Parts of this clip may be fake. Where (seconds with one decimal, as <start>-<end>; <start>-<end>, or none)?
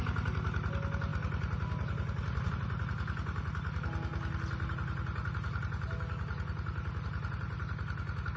none